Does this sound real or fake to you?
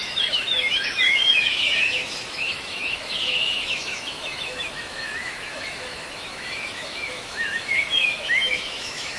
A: fake